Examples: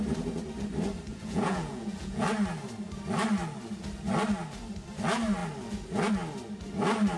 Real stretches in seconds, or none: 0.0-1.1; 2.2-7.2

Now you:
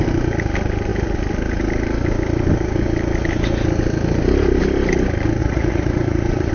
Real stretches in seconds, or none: 0.0-5.4

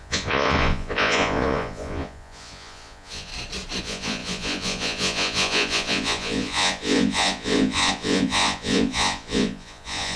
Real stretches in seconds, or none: 3.3-3.8

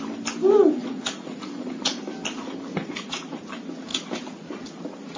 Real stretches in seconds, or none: 0.0-0.8; 2.0-2.8; 3.4-5.2

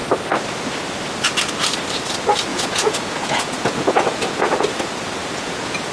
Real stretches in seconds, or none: 0.0-2.5; 4.5-5.2

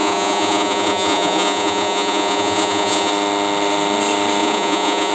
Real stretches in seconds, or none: 3.1-4.4

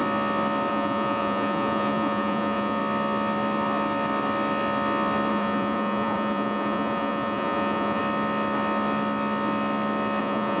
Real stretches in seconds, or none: 0.0-0.7; 2.8-5.3; 8.0-10.2

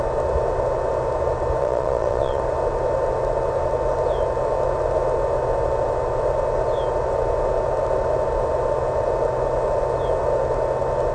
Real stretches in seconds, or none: 0.0-1.6; 2.4-11.1